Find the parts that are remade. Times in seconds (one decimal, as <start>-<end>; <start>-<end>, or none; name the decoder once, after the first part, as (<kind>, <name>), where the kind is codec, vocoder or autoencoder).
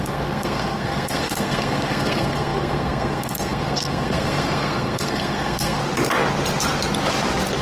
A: 0.0-5.8 (codec, SNAC)